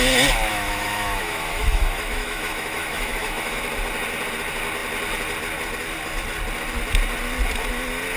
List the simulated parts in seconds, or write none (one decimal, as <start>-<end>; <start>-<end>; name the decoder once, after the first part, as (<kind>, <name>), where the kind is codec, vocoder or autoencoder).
0.5-3.6 (autoencoder, DAC-VAE)